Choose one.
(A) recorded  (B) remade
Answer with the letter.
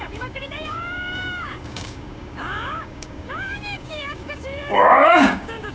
B